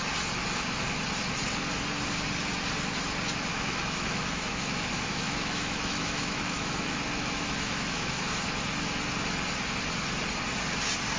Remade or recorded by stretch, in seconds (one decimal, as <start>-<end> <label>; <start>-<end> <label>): 0.0-3.5 recorded; 3.5-8.2 remade; 8.2-11.2 recorded